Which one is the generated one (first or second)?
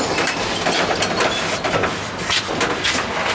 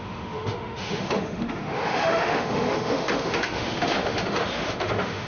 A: second